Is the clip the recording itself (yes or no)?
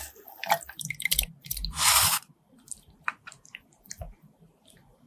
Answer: yes